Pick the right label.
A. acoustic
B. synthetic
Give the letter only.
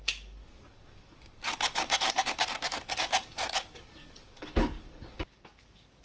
B